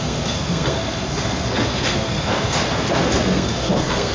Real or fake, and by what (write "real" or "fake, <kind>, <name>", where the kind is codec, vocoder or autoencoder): fake, codec, SNAC